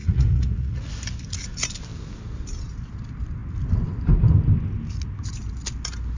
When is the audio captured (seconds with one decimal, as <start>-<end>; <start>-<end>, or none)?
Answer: 0.9-6.2